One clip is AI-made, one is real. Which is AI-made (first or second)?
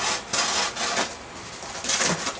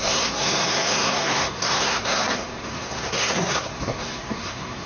second